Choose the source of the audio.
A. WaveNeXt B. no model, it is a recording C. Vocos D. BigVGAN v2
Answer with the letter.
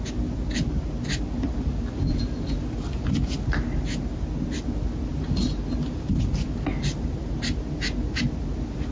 B